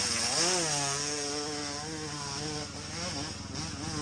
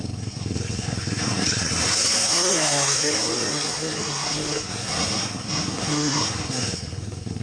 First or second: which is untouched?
first